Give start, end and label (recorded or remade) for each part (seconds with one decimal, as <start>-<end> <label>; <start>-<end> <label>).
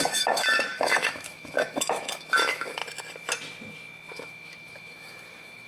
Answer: 0.0-2.8 remade; 2.8-4.1 recorded; 4.1-5.7 remade